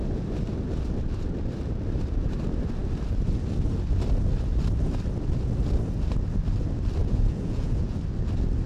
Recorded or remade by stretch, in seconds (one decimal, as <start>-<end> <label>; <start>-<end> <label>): 0.0-7.0 recorded; 7.0-8.0 remade; 8.0-8.7 recorded